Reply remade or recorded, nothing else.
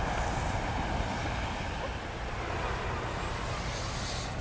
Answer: recorded